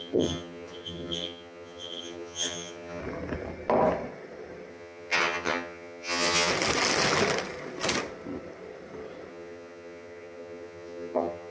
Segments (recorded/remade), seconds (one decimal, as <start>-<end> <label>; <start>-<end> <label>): 0.0-3.0 remade; 3.0-4.7 recorded; 4.7-6.5 remade; 6.5-9.3 recorded; 9.3-11.5 remade